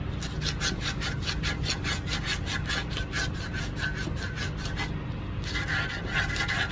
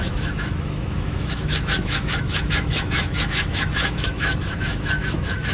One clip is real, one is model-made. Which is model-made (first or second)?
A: second